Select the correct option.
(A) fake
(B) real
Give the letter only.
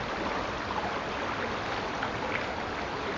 B